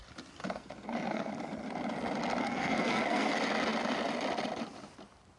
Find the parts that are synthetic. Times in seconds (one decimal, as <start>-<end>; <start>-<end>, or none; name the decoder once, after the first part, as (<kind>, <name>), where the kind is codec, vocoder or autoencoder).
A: 0.4-1.3 (codec, SNAC); 2.4-3.3